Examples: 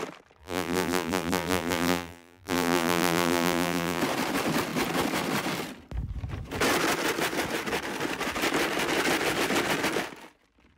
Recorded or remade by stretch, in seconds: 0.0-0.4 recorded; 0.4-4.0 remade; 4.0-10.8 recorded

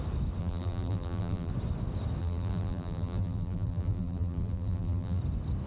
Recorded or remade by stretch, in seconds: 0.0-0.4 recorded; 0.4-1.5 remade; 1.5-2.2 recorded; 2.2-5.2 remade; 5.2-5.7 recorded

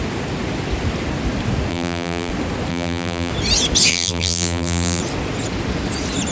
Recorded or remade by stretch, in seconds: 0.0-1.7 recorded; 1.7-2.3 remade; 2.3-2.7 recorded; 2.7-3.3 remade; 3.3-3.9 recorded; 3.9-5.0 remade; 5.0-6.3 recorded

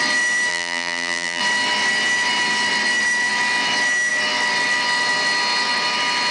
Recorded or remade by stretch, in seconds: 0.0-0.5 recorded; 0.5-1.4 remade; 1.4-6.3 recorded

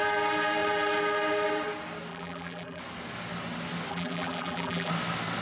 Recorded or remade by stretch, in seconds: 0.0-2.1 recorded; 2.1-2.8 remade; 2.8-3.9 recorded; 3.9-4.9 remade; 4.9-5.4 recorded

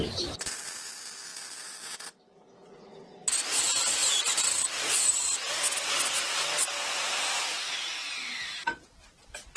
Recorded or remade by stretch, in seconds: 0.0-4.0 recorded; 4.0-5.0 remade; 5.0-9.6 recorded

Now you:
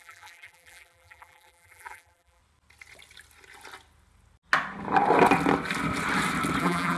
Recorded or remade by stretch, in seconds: 0.0-2.4 remade; 2.4-6.6 recorded; 6.6-7.0 remade

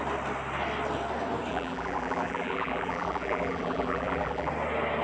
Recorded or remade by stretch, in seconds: 0.0-1.5 recorded; 1.5-4.5 remade; 4.5-5.0 recorded